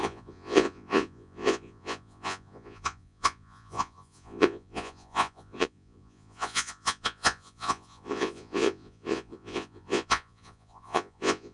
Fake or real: fake